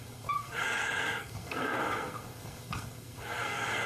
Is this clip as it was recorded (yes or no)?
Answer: no